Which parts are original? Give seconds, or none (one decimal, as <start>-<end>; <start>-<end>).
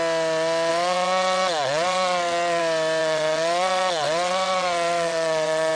0.0-0.7; 2.6-3.0